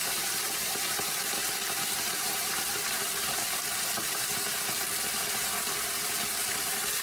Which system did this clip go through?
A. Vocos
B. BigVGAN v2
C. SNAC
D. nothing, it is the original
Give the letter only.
B